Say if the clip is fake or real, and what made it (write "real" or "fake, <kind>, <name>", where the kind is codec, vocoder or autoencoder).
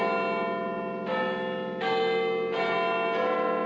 real